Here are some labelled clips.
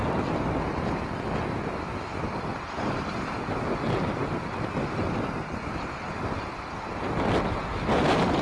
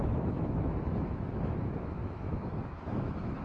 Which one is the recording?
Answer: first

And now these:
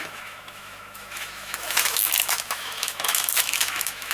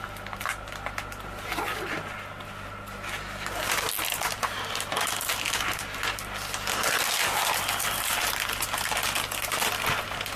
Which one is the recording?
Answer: second